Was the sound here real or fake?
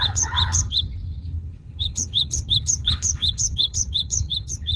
fake